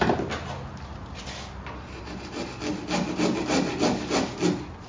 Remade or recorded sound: recorded